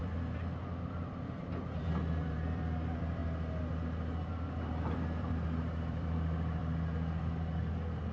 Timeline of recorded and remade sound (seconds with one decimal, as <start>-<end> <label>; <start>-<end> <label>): 0.0-3.2 remade; 3.2-4.3 recorded; 4.3-6.6 remade; 6.6-7.2 recorded; 7.2-8.1 remade